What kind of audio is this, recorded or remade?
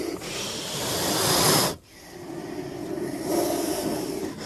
recorded